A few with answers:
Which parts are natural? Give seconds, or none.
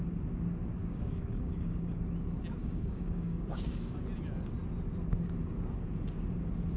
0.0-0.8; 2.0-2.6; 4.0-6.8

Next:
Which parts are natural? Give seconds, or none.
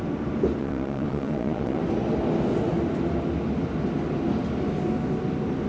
0.0-0.6; 1.8-5.7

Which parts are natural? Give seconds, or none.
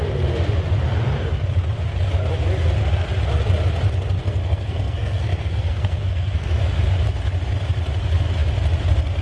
0.0-4.2; 6.6-9.2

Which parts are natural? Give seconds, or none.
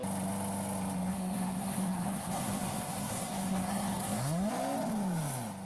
0.0-1.1; 4.5-5.7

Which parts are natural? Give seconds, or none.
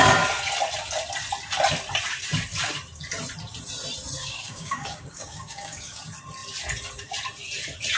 0.0-4.2; 6.0-8.0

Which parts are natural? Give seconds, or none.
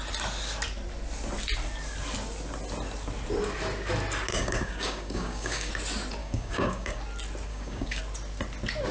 0.0-4.3; 5.7-6.2; 7.0-7.5; 8.0-8.9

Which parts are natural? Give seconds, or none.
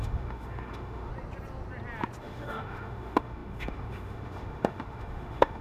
1.1-2.2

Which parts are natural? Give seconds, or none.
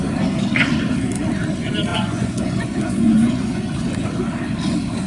0.0-1.9; 3.6-5.1